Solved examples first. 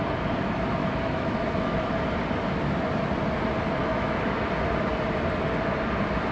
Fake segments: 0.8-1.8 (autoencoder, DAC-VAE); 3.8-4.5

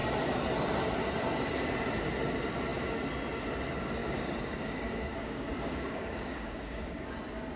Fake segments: 4.0-7.1 (codec, DAC)

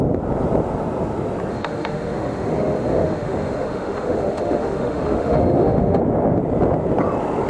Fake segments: 1.5-6.0 (autoencoder, DAC-VAE)